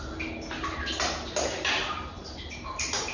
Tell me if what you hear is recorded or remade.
recorded